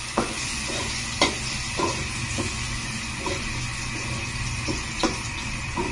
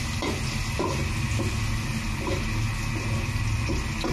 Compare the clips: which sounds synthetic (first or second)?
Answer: first